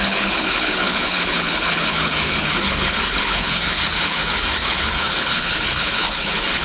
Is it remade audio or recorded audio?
remade